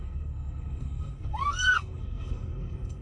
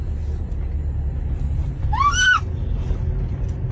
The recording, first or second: second